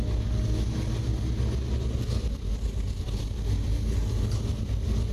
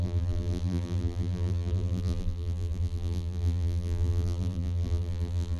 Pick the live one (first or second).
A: first